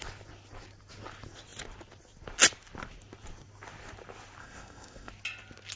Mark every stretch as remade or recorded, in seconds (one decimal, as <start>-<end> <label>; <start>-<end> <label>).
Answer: 0.0-4.4 recorded; 4.4-5.1 remade; 5.1-5.8 recorded